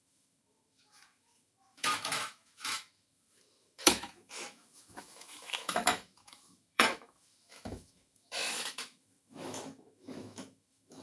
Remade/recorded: remade